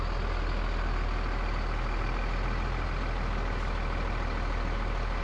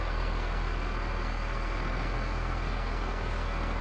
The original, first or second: first